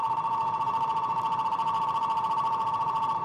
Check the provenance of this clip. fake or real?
real